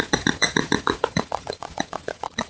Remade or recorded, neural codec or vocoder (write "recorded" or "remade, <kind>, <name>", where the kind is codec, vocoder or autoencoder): remade, vocoder, Vocos